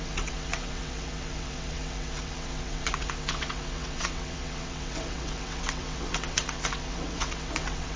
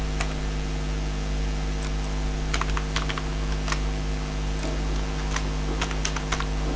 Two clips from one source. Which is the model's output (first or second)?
first